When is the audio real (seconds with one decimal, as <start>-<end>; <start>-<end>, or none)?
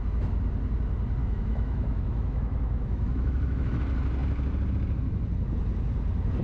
0.0-1.2; 3.8-6.4